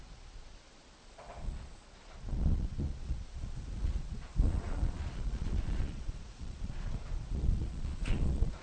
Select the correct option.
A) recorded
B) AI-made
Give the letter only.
B